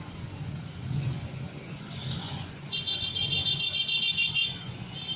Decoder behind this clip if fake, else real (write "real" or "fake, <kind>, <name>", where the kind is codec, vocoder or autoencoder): fake, vocoder, Vocos